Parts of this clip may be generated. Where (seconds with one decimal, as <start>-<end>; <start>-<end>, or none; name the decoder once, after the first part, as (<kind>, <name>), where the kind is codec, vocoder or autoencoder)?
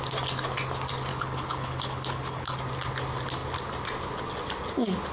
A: 1.1-2.6 (codec, HILCodec)